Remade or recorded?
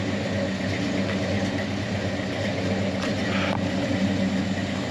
recorded